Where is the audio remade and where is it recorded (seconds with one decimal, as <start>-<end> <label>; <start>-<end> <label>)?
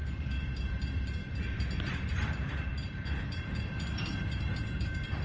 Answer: 0.0-1.2 remade; 1.2-1.9 recorded; 1.9-5.2 remade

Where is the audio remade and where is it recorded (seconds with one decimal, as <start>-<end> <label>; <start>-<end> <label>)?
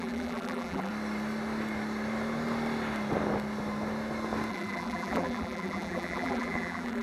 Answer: 0.0-0.9 remade; 0.9-4.5 recorded; 4.5-7.0 remade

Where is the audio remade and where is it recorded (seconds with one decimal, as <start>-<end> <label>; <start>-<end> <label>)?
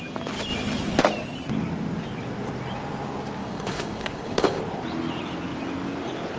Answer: 0.0-3.4 recorded; 3.4-4.6 remade; 4.6-6.4 recorded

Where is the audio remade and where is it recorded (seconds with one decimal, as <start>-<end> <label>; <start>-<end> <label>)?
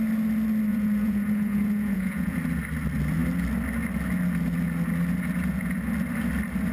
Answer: 0.0-0.7 recorded; 0.7-2.4 remade; 2.4-6.7 recorded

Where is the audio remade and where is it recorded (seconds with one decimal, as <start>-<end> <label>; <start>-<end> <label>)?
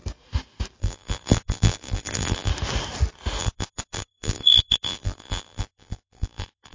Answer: 0.0-0.8 recorded; 0.8-2.5 remade; 2.5-3.4 recorded; 3.4-6.7 remade